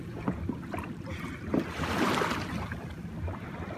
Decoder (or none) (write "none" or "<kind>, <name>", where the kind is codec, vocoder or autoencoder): none